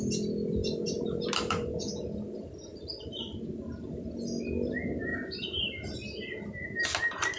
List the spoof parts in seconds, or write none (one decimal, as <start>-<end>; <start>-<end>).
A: 0.6-1.9; 2.7-4.1